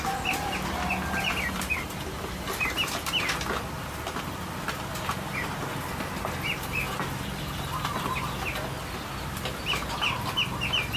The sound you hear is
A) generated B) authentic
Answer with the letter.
B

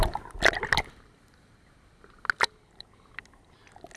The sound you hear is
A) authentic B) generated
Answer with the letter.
A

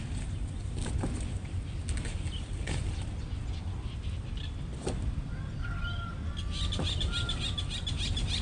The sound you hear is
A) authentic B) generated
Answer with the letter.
A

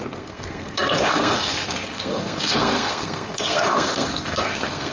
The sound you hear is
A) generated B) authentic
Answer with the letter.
A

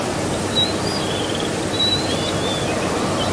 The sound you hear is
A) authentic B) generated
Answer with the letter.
A